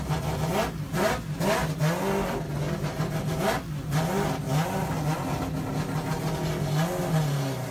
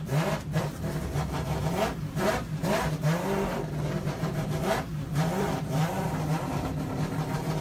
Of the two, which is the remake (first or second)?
second